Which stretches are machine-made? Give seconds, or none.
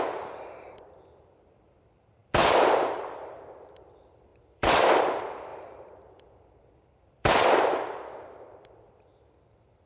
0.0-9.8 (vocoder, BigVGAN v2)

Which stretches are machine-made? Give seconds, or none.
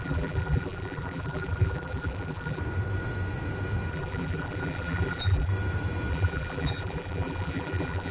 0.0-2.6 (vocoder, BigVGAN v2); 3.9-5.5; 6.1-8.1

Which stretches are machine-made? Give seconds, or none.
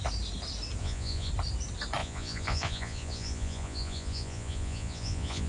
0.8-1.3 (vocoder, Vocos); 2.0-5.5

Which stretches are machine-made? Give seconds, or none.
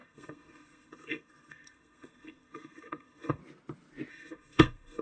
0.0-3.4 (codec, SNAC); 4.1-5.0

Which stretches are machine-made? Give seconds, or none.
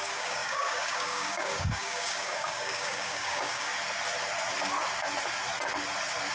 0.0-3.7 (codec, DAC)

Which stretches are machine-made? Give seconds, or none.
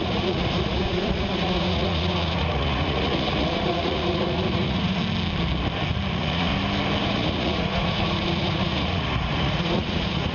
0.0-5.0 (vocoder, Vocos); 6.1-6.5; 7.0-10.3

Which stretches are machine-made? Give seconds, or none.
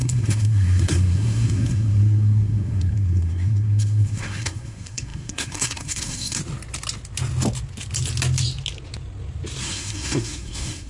0.0-6.4 (codec, SNAC); 9.6-10.9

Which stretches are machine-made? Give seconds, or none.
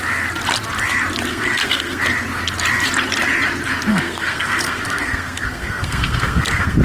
1.3-2.0 (codec, SNAC); 3.9-6.8